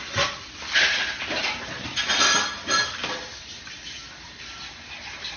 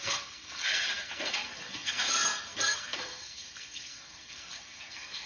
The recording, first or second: first